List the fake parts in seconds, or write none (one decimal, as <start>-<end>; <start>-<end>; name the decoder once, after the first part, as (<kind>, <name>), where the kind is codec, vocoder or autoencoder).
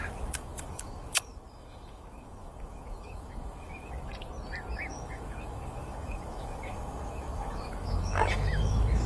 0.0-4.1 (autoencoder, DAC-VAE); 4.9-9.1